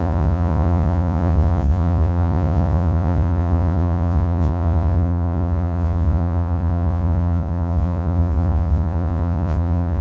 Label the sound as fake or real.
fake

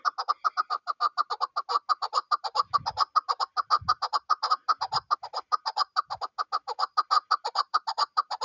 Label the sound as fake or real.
real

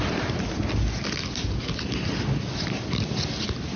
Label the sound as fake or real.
real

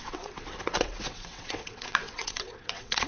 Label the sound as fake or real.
fake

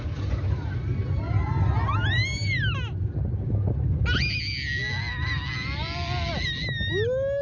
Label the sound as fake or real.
real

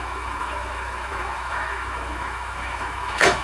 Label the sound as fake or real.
fake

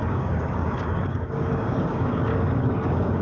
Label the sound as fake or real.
fake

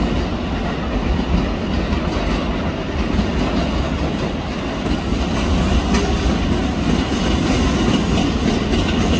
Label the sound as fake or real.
real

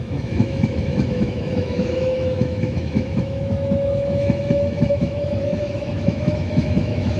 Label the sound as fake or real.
fake